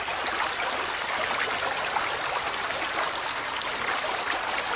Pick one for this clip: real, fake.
real